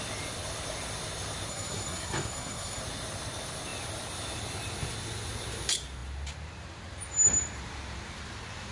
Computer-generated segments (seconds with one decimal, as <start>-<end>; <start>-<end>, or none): 1.5-2.8